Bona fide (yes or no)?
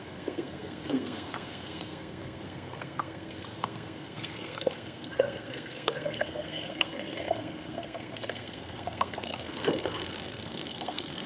no